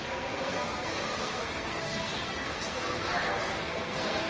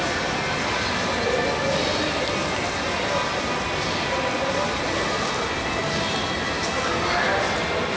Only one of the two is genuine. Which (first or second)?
second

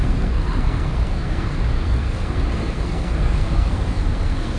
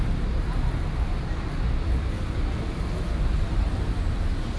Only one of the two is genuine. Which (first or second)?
second